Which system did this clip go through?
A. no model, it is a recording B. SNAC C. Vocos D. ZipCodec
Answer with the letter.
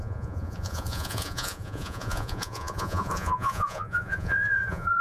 C